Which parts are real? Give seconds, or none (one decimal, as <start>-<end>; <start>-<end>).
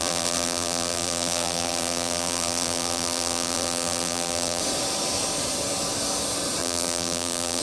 4.6-6.6